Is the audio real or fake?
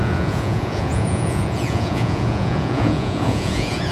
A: fake